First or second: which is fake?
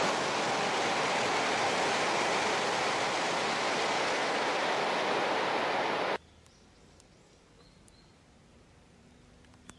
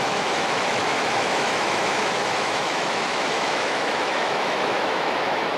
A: second